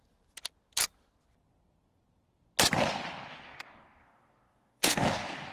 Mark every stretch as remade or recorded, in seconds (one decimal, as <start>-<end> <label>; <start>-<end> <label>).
0.0-3.3 recorded; 3.3-5.5 remade